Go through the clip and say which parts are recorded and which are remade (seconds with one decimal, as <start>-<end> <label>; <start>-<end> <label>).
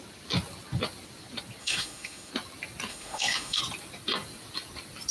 0.0-1.6 recorded; 1.6-2.3 remade; 2.3-2.9 recorded; 2.9-3.6 remade; 3.6-5.1 recorded